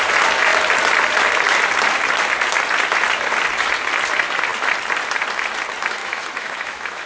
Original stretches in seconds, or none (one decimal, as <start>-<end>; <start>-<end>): 0.0-6.0